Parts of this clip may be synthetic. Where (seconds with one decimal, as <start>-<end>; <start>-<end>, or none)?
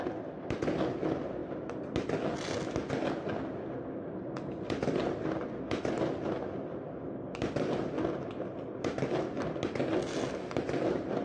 none